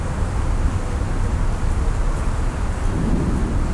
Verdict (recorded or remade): recorded